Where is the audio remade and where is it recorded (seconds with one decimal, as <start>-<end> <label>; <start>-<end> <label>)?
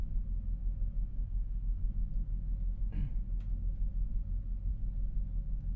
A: 0.0-1.1 recorded; 1.1-1.9 remade; 1.9-5.8 recorded